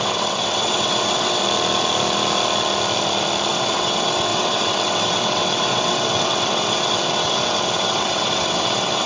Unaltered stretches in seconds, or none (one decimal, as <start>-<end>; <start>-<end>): 1.4-3.5